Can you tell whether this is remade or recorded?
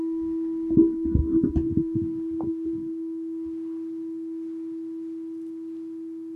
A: recorded